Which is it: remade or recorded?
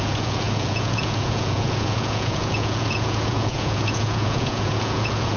remade